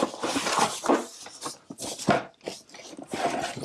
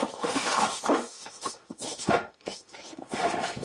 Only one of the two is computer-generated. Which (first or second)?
second